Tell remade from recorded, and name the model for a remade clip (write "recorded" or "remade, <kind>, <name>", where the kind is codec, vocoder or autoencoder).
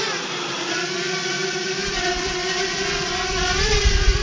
remade, vocoder, BigVGAN v2